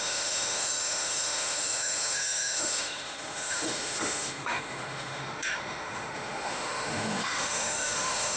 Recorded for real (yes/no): no